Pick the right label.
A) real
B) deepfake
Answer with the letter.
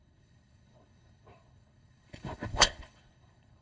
B